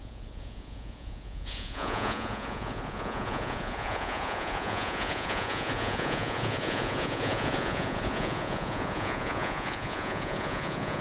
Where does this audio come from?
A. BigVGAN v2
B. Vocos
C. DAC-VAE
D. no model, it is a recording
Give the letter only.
B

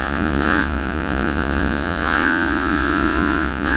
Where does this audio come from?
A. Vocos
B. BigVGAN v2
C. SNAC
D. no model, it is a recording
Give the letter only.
A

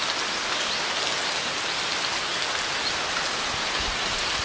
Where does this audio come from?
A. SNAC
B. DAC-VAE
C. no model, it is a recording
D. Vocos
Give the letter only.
C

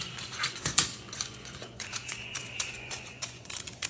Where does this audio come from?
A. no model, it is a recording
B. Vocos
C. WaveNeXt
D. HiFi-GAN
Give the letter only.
B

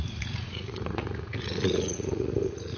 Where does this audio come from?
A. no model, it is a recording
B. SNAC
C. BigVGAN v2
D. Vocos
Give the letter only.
D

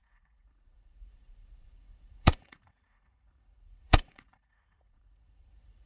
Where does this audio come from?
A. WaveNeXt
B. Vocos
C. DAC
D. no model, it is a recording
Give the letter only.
B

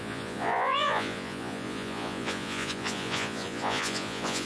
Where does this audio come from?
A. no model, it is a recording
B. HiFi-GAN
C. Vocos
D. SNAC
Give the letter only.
C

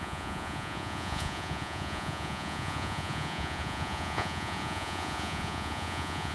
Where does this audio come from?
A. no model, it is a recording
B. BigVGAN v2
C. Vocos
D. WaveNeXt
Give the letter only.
C